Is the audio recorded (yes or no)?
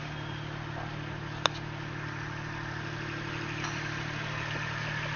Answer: yes